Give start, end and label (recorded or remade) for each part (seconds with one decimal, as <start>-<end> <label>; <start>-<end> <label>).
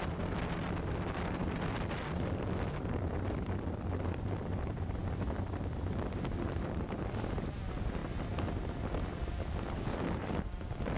0.0-5.0 remade; 5.0-5.8 recorded; 5.8-8.0 remade; 8.0-8.6 recorded; 8.6-11.0 remade